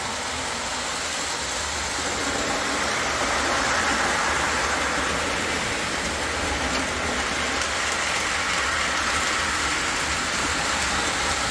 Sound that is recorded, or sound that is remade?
recorded